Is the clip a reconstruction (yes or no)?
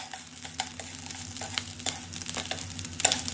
no